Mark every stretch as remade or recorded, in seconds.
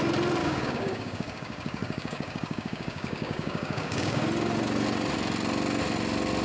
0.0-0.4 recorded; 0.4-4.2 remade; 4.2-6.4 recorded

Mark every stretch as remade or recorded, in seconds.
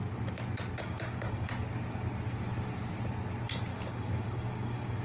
0.0-0.8 recorded; 0.8-1.5 remade; 1.5-3.7 recorded; 3.7-5.0 remade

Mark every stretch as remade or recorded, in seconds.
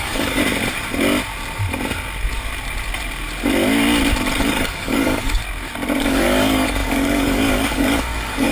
0.0-0.4 remade; 0.4-4.4 recorded; 4.4-5.4 remade; 5.4-6.0 recorded; 6.0-8.5 remade